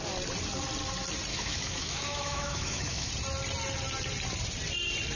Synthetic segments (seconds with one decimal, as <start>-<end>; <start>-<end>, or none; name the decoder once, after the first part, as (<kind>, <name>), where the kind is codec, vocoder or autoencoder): 1.3-3.1 (autoencoder, DAC-VAE)